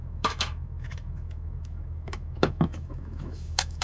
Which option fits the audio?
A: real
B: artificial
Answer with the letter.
B